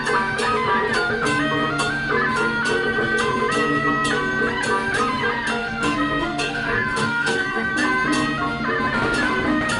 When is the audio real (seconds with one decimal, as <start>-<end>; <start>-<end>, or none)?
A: 0.0-5.6; 7.7-9.8